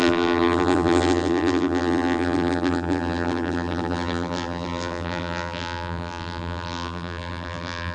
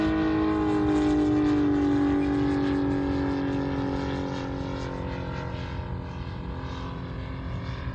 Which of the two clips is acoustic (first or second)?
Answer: second